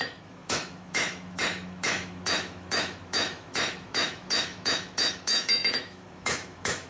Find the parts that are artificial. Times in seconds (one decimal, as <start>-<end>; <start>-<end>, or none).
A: 0.0-6.9